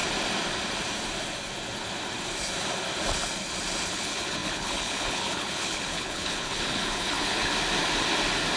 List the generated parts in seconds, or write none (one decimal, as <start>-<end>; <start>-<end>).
3.9-7.5